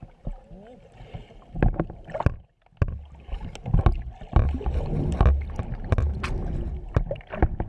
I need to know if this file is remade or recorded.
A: recorded